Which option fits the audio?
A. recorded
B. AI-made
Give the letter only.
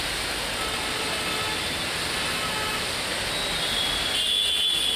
A